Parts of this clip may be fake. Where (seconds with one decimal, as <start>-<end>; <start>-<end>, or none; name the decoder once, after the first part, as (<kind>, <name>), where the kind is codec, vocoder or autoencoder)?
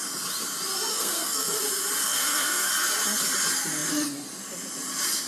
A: 0.9-1.6 (codec, SNAC); 2.0-2.7